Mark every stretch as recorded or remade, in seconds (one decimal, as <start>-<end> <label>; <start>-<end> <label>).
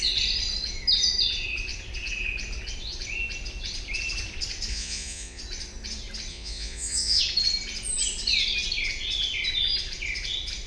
0.0-4.7 recorded; 4.7-5.4 remade; 5.4-6.3 recorded; 6.3-7.2 remade; 7.2-10.7 recorded